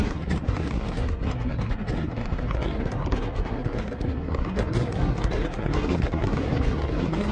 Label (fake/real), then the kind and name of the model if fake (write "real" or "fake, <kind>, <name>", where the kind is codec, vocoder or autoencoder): fake, codec, SNAC